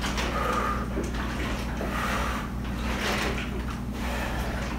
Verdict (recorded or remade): recorded